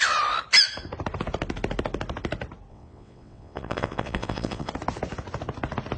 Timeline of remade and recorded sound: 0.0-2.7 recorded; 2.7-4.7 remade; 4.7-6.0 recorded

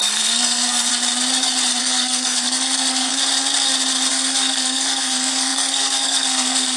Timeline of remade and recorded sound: 0.0-0.9 remade; 0.9-1.8 recorded; 1.8-3.1 remade; 3.1-4.1 recorded; 4.1-6.8 remade